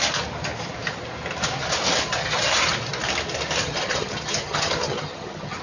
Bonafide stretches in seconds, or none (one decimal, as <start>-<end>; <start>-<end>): 0.0-2.2; 2.7-3.6